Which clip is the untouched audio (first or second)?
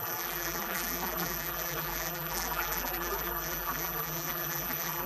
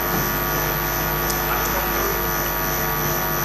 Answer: second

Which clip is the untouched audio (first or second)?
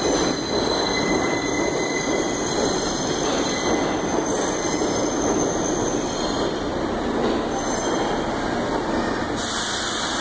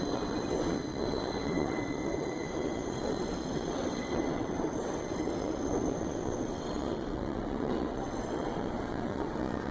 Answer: first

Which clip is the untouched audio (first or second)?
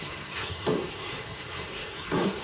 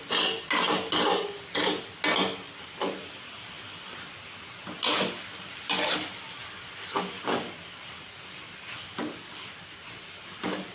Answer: second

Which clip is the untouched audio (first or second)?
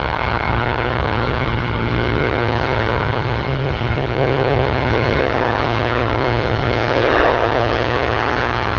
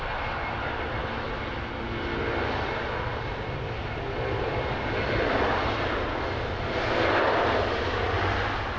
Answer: second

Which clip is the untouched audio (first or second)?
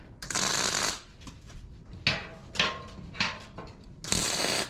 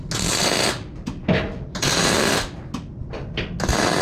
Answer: second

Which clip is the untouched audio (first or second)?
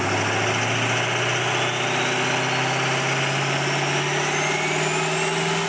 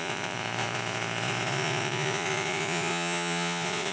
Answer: first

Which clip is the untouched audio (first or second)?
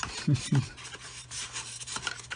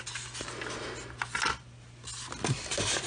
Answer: second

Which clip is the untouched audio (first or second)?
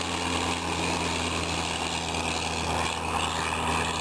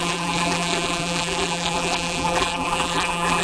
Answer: first